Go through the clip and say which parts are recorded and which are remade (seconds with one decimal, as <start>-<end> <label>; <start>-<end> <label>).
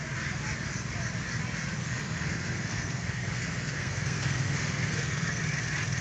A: 0.0-1.8 recorded; 1.8-5.4 remade; 5.4-6.0 recorded